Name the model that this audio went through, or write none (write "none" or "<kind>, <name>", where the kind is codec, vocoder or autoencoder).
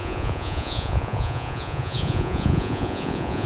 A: vocoder, Vocos